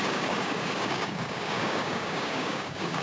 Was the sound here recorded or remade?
remade